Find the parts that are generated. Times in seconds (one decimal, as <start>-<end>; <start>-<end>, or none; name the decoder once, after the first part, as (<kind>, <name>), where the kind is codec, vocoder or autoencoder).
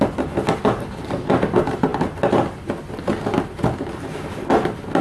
none